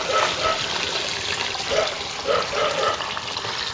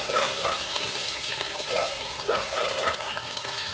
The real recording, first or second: first